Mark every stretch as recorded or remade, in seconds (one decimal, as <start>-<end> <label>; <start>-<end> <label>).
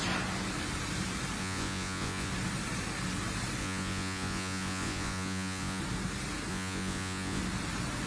0.0-1.4 recorded; 1.4-2.3 remade; 2.3-3.6 recorded; 3.6-5.8 remade; 5.8-6.5 recorded; 6.5-7.4 remade; 7.4-8.1 recorded